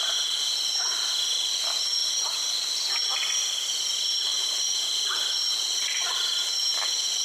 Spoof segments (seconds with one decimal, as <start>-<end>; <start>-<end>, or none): none